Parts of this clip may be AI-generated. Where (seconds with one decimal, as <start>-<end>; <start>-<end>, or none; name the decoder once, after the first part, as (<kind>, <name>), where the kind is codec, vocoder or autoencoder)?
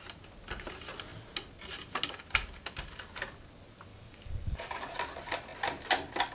3.9-4.9 (codec, DAC)